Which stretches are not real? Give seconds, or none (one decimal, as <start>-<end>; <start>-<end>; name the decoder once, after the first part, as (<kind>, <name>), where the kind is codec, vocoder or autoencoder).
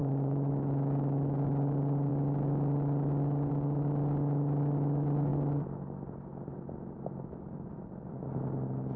0.0-0.5 (vocoder, Vocos)